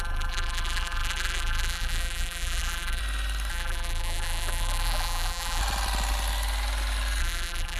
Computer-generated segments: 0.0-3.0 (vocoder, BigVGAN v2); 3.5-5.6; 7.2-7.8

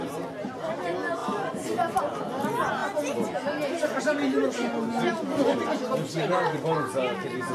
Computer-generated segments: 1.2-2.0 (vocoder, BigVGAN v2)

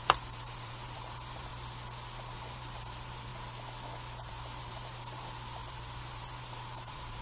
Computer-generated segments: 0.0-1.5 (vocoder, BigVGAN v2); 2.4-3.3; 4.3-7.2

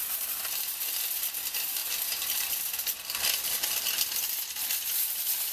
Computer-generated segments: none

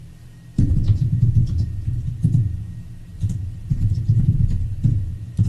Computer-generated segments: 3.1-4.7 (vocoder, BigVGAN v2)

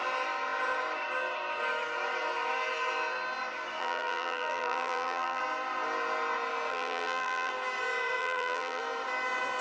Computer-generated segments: 3.8-5.4 (vocoder, BigVGAN v2); 6.7-7.5; 8.2-8.8

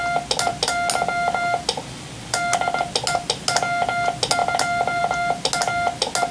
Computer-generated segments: none

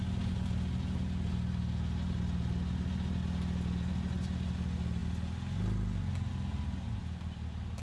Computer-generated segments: none